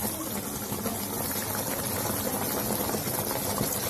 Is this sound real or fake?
real